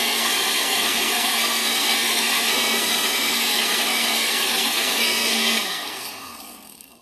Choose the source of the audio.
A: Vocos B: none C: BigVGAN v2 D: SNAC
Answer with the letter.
D